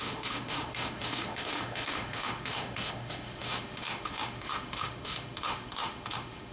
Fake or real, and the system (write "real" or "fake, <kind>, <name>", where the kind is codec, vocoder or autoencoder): fake, autoencoder, DAC-VAE